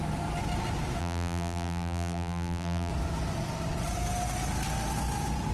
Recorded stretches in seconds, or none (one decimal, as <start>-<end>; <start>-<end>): 0.0-1.0; 2.9-5.5

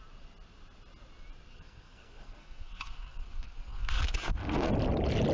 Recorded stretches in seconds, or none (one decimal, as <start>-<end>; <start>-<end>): 0.0-1.5; 4.7-5.3

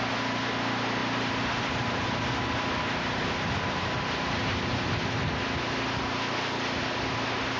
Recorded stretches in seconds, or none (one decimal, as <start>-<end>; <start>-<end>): 0.0-7.6

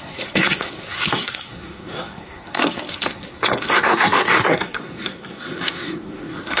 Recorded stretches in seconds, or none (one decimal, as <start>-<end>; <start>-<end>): none

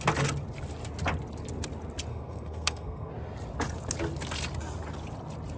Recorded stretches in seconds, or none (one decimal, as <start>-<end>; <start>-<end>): 0.0-2.1; 3.1-5.6

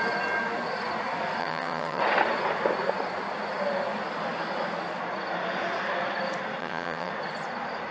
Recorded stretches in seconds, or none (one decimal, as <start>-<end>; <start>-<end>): 0.0-1.4; 2.0-6.6; 7.1-7.9

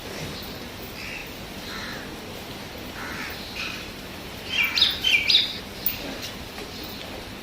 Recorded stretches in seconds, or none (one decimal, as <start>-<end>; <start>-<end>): 0.0-7.4

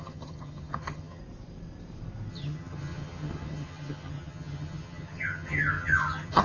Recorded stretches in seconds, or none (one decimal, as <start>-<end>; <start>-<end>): 1.2-2.3